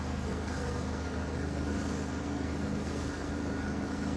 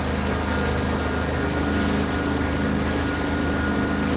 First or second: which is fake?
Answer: first